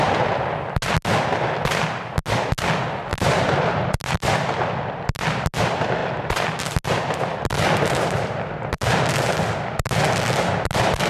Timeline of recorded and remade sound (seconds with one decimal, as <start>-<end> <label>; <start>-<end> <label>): 0.0-11.1 recorded